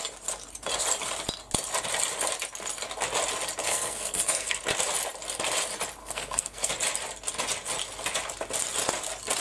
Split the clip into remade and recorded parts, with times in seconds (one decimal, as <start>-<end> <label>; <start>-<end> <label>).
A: 0.0-3.6 recorded; 3.6-4.6 remade; 4.6-6.0 recorded; 6.0-6.7 remade; 6.7-9.4 recorded